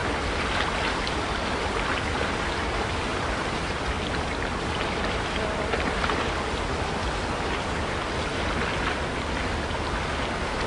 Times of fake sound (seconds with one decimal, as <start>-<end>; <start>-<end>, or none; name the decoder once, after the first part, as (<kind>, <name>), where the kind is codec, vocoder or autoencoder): 3.1-3.8 (vocoder, BigVGAN v2)